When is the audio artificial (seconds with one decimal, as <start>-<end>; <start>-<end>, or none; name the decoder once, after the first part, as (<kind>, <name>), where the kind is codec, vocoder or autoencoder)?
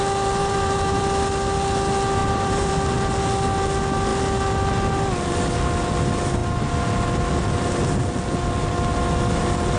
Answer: 0.4-1.0 (vocoder, BigVGAN v2); 2.2-2.7